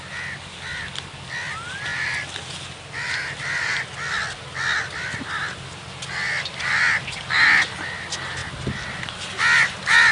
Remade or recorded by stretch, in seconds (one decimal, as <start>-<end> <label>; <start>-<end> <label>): 0.0-10.1 recorded